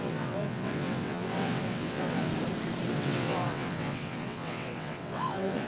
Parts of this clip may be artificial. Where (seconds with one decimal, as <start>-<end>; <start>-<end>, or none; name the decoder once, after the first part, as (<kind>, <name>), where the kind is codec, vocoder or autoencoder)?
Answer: 0.0-2.3 (vocoder, WaveNeXt); 2.9-5.7